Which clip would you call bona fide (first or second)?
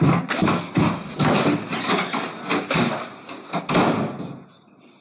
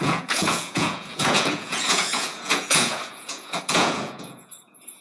first